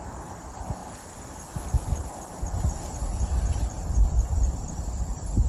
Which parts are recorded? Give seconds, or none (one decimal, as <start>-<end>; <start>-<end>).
0.0-3.0; 4.6-5.5